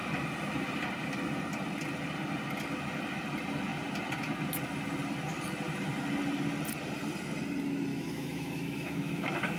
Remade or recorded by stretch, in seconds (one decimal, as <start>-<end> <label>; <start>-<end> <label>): 0.0-7.9 recorded; 7.9-9.6 remade